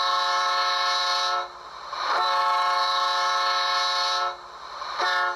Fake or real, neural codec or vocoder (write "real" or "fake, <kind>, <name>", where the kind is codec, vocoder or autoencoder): real